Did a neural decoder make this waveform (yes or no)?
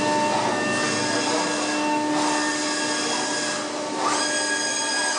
no